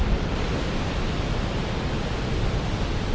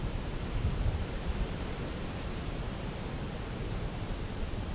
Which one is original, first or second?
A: first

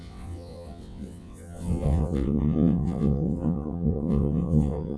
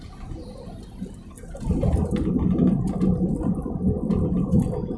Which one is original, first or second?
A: second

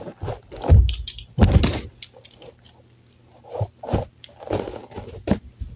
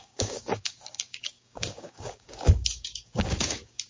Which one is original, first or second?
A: first